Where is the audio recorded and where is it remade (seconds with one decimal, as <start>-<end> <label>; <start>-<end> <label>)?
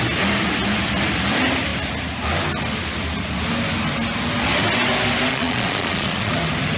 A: 0.0-5.3 recorded; 5.3-6.3 remade; 6.3-6.8 recorded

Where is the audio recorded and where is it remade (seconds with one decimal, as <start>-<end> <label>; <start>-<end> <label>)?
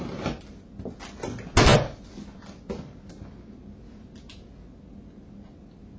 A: 0.0-6.0 recorded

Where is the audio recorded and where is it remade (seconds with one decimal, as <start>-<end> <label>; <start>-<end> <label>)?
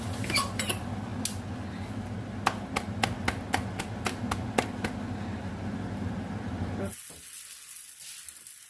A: 0.0-8.7 recorded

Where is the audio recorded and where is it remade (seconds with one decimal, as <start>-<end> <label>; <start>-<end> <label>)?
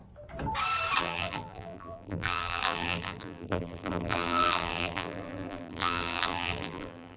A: 0.0-1.0 recorded; 1.0-7.2 remade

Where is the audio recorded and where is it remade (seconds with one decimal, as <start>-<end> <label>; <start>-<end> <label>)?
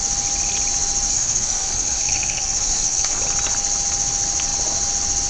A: 0.0-1.1 recorded; 1.1-3.2 remade; 3.2-5.3 recorded